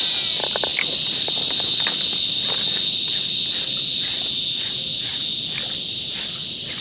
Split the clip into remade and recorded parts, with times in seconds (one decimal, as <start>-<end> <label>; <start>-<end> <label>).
0.0-6.8 recorded